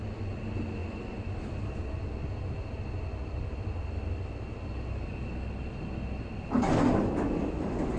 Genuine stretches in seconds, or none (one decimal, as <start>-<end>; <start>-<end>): 0.0-8.0